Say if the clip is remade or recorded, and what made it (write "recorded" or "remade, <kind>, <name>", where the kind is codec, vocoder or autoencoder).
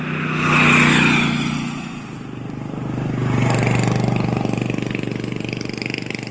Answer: recorded